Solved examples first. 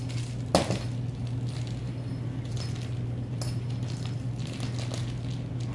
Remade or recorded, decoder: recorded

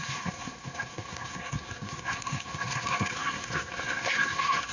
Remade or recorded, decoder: remade, codec, SNAC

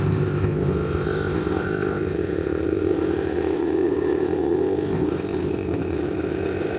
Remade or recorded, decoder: remade, codec, ZipCodec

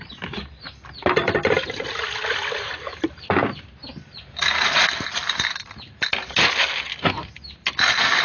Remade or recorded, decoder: recorded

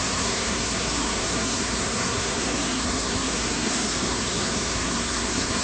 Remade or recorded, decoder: remade, codec, SNAC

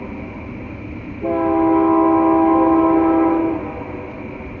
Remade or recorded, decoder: recorded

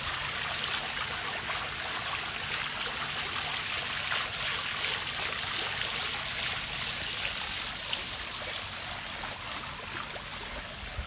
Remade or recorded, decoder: recorded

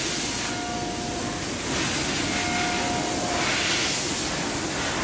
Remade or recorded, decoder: recorded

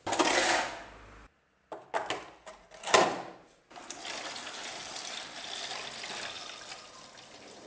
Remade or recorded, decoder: recorded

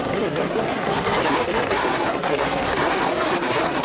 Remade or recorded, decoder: remade, codec, SNAC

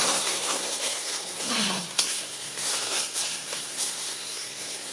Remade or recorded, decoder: remade, codec, SNAC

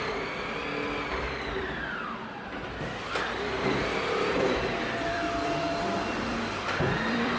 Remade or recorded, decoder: remade, vocoder, BigVGAN v2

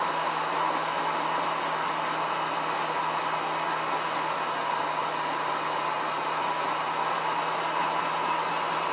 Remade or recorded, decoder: recorded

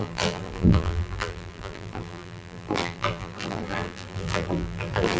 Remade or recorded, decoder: remade, vocoder, BigVGAN v2